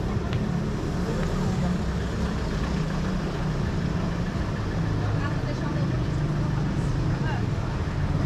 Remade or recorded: recorded